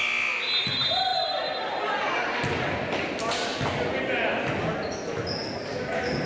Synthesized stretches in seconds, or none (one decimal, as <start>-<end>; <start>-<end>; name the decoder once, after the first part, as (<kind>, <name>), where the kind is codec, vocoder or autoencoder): none